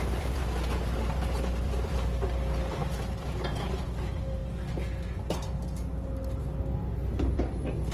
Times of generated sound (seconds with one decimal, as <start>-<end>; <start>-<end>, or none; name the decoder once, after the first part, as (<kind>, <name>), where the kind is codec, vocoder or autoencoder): 0.0-0.4 (vocoder, BigVGAN v2); 1.2-4.4; 7.2-7.9